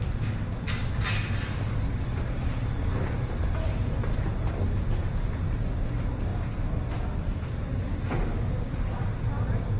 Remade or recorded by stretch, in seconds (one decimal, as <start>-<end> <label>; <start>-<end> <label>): 0.0-8.3 recorded; 8.3-8.9 remade; 8.9-9.8 recorded